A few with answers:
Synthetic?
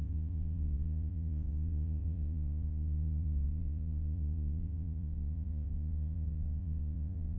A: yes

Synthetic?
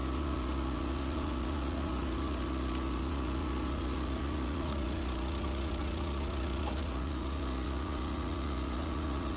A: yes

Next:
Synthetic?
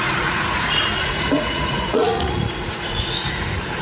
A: yes